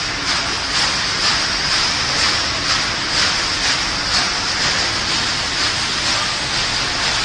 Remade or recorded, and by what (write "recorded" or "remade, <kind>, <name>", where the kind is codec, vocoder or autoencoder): recorded